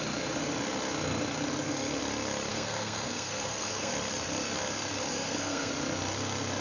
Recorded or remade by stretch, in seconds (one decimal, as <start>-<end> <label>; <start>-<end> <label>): 0.0-2.5 recorded; 2.5-3.9 remade; 3.9-5.1 recorded; 5.1-5.7 remade; 5.7-6.6 recorded